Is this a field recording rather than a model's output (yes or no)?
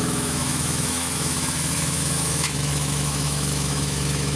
no